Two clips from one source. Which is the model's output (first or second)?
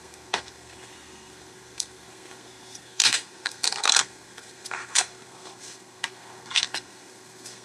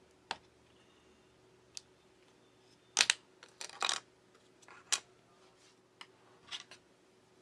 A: first